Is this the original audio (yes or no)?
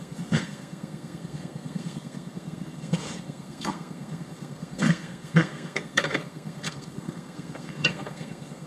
no